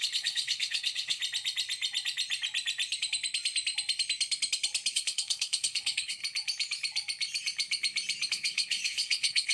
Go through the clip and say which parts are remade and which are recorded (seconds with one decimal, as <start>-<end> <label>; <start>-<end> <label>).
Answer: 0.0-1.2 remade; 1.2-4.9 recorded; 4.9-6.2 remade; 6.2-8.3 recorded; 8.3-9.5 remade